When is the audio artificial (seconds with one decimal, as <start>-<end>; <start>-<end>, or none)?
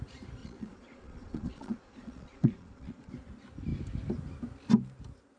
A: 0.4-3.1